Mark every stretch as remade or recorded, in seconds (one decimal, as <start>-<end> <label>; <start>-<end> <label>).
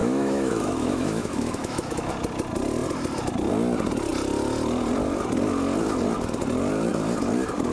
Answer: 0.0-2.1 remade; 2.1-7.7 recorded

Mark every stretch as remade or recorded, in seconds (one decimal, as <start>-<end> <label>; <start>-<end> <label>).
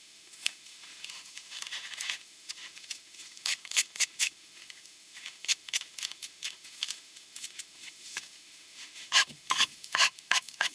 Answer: 0.0-10.7 remade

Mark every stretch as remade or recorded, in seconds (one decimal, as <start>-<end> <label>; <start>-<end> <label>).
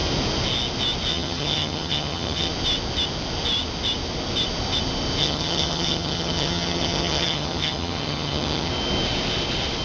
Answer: 0.0-1.1 recorded; 1.1-2.5 remade; 2.5-5.2 recorded; 5.2-8.7 remade; 8.7-9.8 recorded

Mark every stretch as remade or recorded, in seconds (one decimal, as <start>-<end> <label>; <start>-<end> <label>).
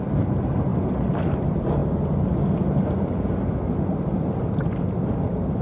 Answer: 0.0-0.7 recorded; 0.7-1.2 remade; 1.2-5.6 recorded